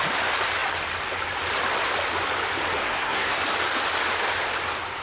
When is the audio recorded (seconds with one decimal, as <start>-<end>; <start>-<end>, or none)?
0.0-2.8; 3.4-5.0